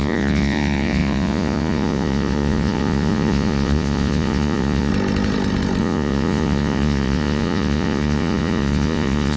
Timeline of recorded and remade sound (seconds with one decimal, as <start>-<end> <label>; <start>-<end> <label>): 0.0-4.9 remade; 4.9-5.8 recorded; 5.8-9.4 remade